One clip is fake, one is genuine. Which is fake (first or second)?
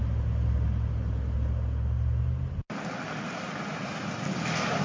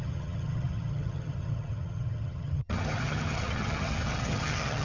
second